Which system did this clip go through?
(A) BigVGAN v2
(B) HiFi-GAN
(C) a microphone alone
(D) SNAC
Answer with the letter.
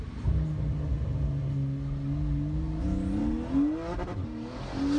C